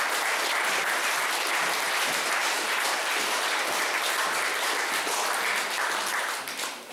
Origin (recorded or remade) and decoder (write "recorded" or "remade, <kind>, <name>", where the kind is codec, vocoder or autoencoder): remade, vocoder, BigVGAN v2